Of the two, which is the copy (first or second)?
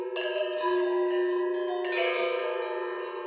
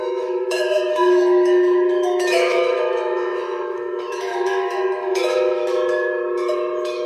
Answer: second